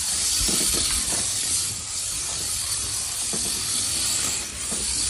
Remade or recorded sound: remade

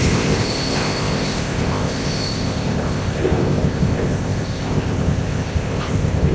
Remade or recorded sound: remade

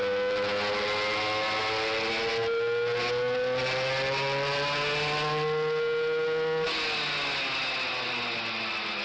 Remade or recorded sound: recorded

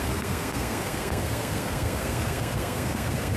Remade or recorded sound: remade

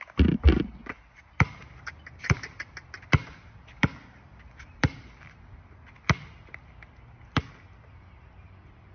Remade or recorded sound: recorded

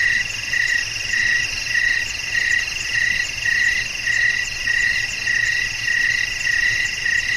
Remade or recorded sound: recorded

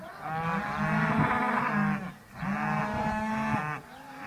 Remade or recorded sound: recorded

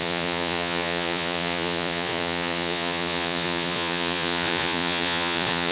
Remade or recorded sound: remade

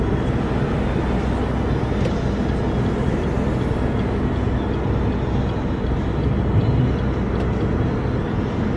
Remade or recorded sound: recorded